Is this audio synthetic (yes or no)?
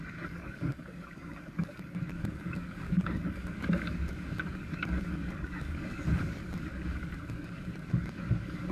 yes